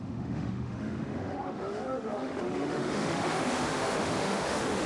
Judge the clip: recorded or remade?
remade